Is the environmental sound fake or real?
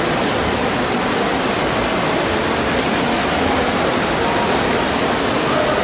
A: real